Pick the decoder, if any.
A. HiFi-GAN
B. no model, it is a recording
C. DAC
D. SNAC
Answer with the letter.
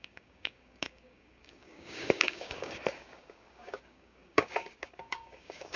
C